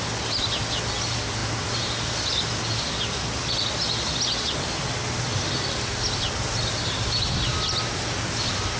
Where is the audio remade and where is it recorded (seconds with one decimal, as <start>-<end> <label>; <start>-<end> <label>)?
0.0-8.8 recorded